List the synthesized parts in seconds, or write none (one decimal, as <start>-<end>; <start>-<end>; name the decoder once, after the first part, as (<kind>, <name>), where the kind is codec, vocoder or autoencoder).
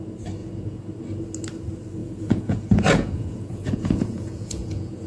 0.4-0.9 (vocoder, Vocos); 2.0-5.1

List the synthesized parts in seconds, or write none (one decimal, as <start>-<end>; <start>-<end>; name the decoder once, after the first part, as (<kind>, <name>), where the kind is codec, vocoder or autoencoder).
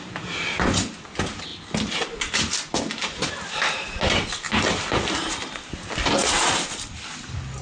none